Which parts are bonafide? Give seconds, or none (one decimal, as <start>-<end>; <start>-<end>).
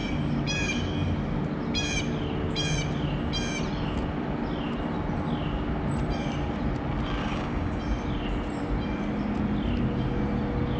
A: 0.0-7.2; 7.8-10.8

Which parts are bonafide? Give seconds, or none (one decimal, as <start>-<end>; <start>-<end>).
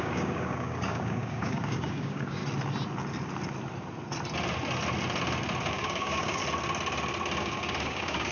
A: 2.4-5.7; 6.4-7.4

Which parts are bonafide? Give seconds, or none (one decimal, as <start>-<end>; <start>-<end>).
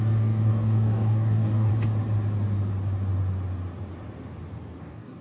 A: 1.7-4.8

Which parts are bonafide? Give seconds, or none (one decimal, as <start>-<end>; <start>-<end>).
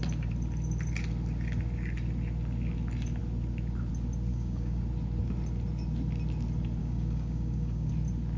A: 0.0-4.3; 4.8-6.8; 7.9-8.4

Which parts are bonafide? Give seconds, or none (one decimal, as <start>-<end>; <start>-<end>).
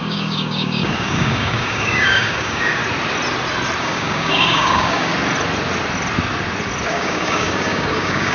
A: 2.8-3.8; 5.1-6.9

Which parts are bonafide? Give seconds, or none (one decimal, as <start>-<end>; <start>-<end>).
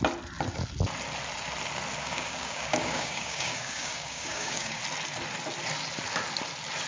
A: 0.0-2.0; 4.8-6.9